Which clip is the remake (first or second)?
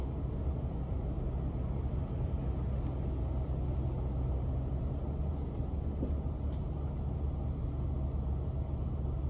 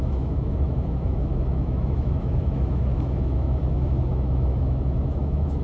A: second